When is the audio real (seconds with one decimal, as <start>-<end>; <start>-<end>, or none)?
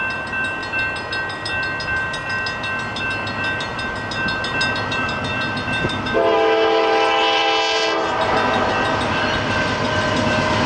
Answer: 0.6-3.0; 3.7-4.7; 7.4-8.7